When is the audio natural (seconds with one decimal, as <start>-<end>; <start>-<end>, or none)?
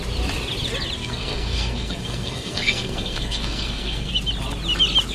0.0-1.0; 4.1-5.1